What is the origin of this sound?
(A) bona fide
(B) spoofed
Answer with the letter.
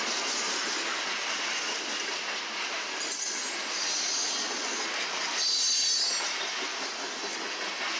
A